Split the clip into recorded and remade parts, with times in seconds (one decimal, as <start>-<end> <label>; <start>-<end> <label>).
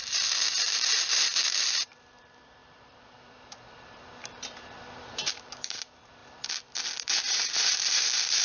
0.0-6.2 remade; 6.2-7.2 recorded; 7.2-8.4 remade